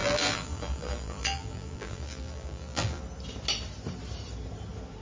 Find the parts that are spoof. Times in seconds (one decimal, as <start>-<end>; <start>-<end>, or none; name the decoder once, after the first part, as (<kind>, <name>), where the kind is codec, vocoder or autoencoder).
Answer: 0.0-3.0 (vocoder, BigVGAN v2)